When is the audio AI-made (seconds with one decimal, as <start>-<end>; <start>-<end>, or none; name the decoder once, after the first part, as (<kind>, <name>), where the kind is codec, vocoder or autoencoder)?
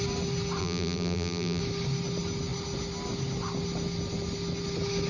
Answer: 0.6-1.6 (vocoder, BigVGAN v2)